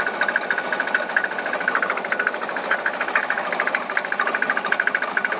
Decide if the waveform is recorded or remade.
recorded